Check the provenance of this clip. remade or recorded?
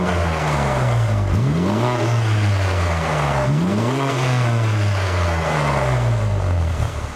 remade